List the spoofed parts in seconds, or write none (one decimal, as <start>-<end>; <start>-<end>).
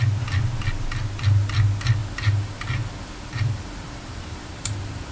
2.0-5.1